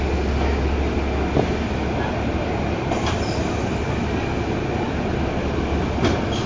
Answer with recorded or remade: recorded